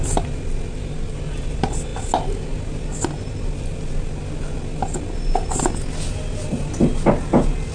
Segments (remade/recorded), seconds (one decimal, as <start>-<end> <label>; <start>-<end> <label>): 0.0-7.7 recorded